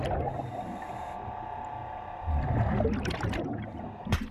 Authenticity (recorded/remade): recorded